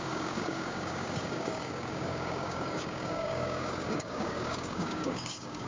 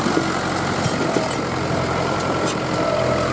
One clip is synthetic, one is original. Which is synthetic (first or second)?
first